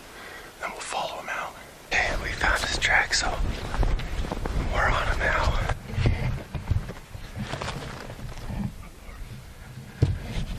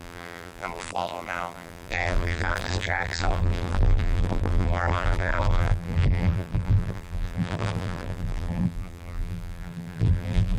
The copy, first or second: second